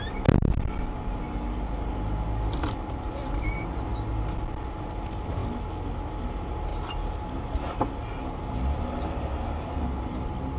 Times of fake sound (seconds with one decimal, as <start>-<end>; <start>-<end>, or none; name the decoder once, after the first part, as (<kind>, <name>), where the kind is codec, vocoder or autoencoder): none